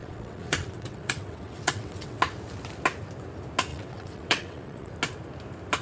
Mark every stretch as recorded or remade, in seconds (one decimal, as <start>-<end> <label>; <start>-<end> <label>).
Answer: 0.0-2.2 remade; 2.2-3.7 recorded; 3.7-4.9 remade; 4.9-5.8 recorded